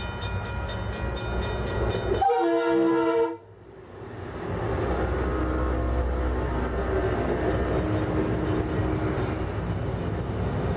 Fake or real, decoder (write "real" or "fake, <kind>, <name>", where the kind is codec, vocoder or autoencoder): real